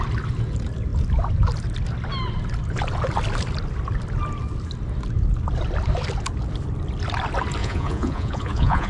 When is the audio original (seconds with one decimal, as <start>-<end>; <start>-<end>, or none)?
0.0-7.6